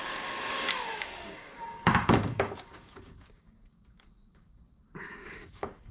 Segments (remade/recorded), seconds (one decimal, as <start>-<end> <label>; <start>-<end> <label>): 0.0-5.9 remade